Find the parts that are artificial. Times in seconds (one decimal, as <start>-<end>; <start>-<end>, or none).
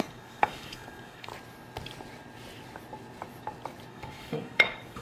0.0-1.3; 3.9-5.0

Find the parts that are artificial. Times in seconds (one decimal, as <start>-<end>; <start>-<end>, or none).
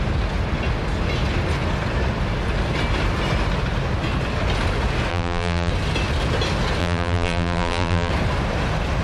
5.1-5.7; 6.8-8.1